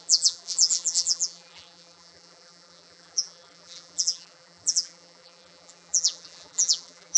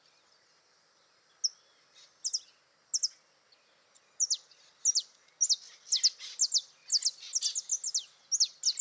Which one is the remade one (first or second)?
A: first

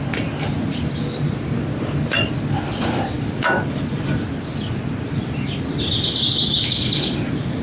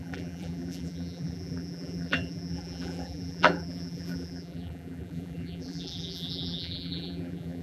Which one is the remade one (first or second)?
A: second